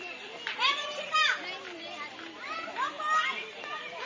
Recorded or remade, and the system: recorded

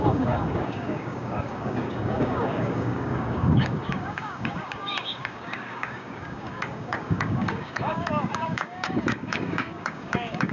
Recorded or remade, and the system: remade, codec, DAC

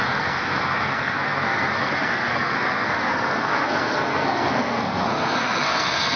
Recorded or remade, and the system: remade, codec, SNAC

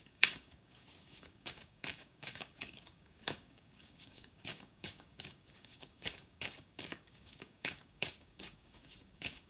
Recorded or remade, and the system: remade, codec, DAC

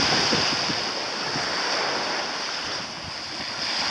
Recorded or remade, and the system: recorded